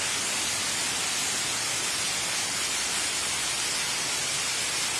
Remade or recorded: recorded